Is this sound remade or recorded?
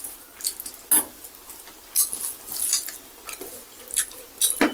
recorded